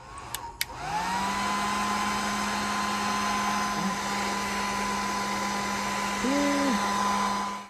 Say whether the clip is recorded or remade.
recorded